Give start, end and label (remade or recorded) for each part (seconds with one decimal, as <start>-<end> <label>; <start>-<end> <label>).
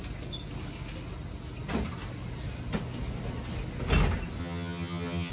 0.0-4.4 recorded; 4.4-5.3 remade